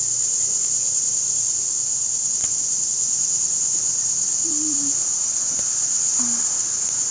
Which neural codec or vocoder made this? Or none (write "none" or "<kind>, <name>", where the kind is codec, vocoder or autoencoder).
vocoder, BigVGAN v2